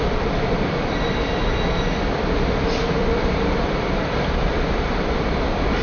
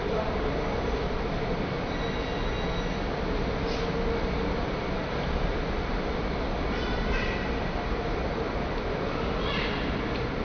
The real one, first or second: second